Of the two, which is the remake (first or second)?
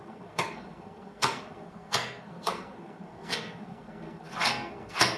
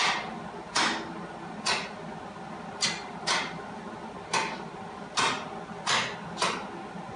first